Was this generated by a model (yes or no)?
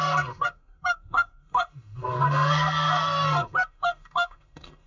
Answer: yes